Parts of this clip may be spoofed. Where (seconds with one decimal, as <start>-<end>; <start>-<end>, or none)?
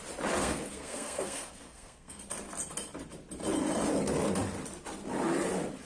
0.4-2.2